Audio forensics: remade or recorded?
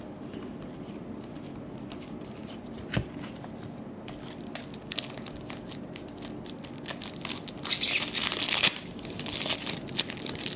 recorded